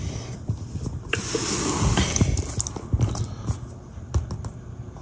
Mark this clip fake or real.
real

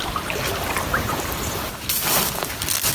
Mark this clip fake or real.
real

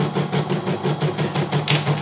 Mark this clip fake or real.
real